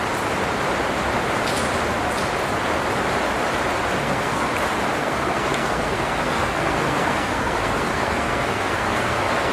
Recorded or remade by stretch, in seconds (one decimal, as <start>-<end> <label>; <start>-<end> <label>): 0.0-4.0 recorded; 4.0-4.5 remade; 4.5-5.0 recorded; 5.0-9.5 remade